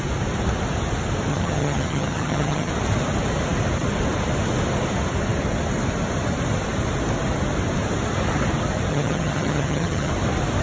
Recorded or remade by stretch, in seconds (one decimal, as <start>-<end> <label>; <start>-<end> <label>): 0.0-1.3 recorded; 1.3-2.7 remade; 2.7-8.9 recorded; 8.9-10.1 remade; 10.1-10.6 recorded